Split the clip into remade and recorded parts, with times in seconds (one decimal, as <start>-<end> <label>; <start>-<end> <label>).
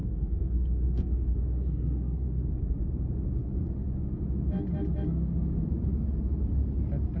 0.0-2.5 remade; 2.5-7.2 recorded